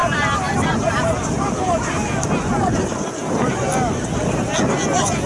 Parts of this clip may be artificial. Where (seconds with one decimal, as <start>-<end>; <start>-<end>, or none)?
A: none